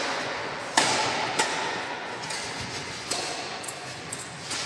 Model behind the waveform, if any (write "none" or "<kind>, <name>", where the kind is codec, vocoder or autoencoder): vocoder, Vocos